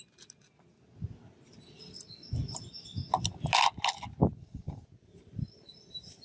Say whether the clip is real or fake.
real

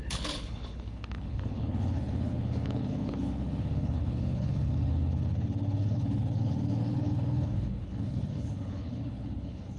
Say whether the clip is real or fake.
fake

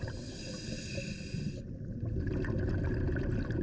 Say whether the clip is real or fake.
real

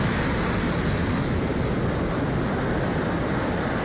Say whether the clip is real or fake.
real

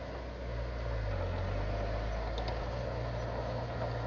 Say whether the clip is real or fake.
real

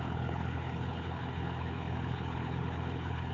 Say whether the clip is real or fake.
fake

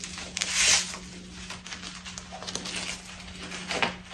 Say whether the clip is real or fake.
real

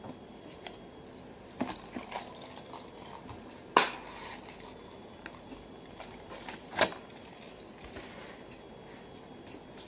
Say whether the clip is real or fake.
real